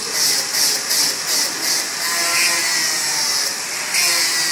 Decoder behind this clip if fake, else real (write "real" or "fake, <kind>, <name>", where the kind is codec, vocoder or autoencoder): real